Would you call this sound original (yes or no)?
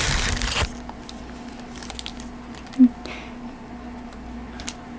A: yes